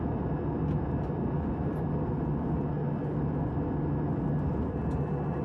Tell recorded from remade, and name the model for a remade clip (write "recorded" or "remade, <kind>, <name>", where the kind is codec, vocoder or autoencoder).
recorded